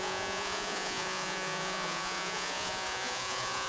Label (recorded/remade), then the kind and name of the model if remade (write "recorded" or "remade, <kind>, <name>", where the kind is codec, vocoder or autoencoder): remade, vocoder, Vocos